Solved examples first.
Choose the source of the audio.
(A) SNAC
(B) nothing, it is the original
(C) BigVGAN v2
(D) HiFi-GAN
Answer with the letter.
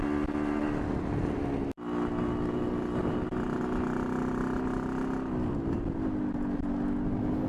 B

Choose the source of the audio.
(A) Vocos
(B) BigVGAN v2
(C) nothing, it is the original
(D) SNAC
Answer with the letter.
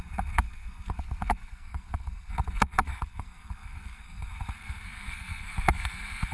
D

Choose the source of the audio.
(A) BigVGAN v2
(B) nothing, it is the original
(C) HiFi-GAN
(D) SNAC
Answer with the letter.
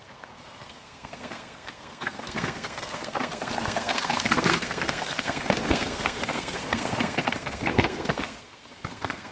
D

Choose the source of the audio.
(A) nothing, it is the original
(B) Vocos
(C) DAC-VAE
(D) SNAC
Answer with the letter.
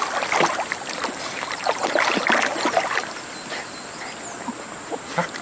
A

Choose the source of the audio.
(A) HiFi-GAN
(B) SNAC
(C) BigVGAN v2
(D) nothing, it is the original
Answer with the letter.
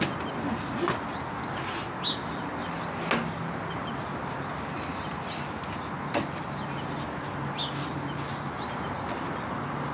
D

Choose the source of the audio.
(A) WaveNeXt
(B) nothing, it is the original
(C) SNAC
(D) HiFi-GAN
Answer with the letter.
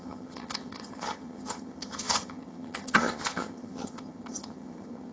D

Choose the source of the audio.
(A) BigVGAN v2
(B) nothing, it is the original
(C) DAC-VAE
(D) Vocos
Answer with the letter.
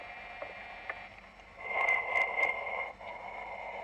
B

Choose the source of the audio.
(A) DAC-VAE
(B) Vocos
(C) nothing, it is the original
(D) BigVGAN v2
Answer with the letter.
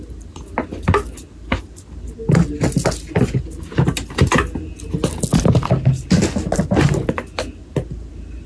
C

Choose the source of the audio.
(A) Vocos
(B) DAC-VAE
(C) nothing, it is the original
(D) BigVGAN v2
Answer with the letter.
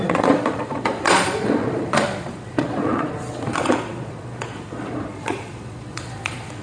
A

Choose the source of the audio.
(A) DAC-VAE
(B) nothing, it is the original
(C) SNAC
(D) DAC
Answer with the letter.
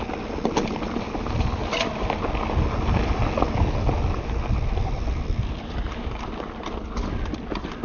B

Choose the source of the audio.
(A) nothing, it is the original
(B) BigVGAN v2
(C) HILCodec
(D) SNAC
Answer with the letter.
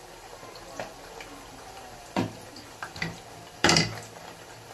B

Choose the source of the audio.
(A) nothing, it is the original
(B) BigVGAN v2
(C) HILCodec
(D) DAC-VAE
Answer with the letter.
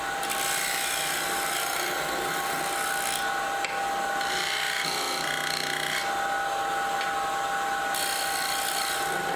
A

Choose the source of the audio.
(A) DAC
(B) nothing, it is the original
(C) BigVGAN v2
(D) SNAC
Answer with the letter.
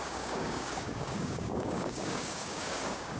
A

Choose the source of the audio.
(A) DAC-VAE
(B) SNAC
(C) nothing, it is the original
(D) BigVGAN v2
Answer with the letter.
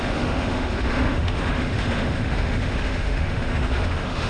A